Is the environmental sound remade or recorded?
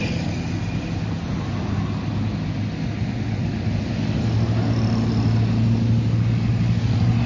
recorded